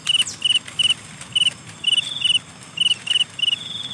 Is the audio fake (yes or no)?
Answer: no